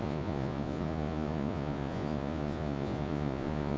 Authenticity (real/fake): fake